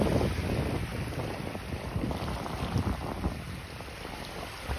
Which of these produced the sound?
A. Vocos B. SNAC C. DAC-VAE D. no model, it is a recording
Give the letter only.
D